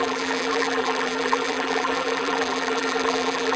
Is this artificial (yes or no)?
yes